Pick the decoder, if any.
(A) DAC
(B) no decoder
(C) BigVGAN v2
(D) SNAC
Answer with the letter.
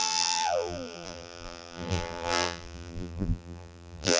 C